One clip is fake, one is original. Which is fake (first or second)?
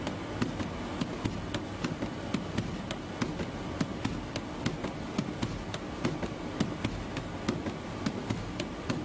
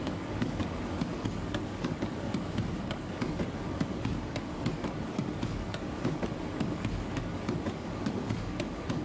second